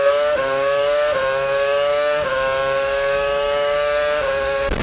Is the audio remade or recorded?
remade